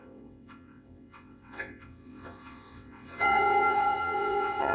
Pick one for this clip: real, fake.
fake